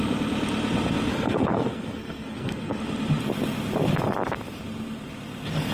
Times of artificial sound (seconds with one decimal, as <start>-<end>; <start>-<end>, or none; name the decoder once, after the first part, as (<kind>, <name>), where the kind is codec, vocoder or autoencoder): 1.1-2.8 (codec, SNAC)